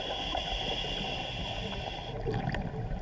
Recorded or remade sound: recorded